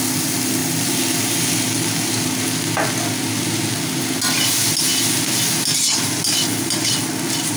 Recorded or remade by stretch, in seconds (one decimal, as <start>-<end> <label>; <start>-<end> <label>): 0.0-7.6 recorded